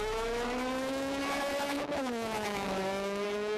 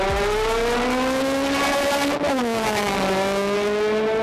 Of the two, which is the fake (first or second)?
first